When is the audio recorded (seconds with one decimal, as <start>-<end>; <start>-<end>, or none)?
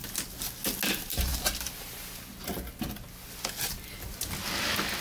0.0-5.0